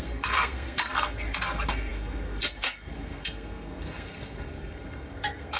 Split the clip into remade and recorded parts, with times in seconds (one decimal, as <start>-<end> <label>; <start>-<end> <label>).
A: 0.0-5.6 remade